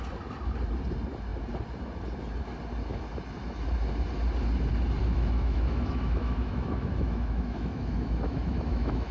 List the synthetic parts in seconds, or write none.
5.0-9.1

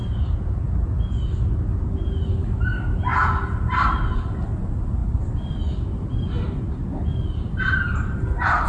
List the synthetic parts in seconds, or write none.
none

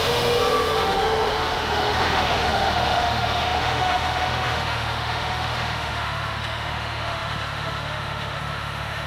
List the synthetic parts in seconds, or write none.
0.0-9.1

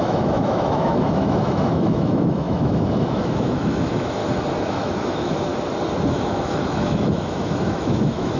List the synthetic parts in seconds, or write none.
0.0-4.2; 4.7-5.5; 6.1-8.4